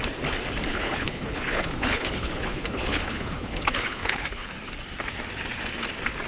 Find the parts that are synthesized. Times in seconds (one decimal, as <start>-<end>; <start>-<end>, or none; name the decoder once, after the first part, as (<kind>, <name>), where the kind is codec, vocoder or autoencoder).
0.7-4.5 (codec, HILCodec)